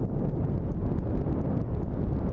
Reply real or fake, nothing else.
real